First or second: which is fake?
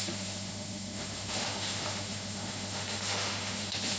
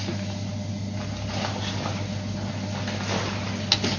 first